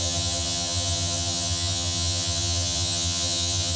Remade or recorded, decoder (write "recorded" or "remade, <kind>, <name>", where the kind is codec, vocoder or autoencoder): remade, vocoder, HiFi-GAN